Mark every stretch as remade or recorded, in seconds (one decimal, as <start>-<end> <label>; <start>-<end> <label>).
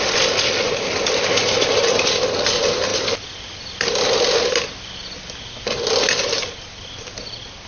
0.0-7.7 recorded